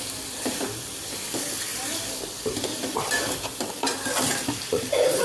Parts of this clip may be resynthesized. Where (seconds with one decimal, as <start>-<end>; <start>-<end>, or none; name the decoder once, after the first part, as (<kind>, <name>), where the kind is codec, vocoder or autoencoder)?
0.0-5.2 (vocoder, BigVGAN v2)